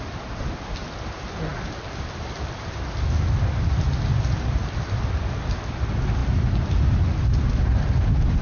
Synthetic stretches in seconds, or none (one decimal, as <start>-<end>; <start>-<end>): none